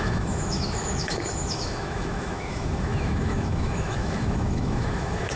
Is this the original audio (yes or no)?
no